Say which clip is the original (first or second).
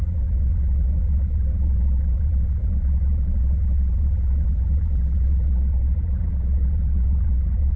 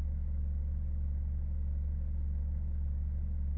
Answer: second